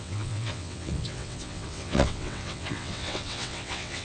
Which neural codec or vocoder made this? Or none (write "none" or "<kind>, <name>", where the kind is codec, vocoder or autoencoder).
vocoder, WaveNeXt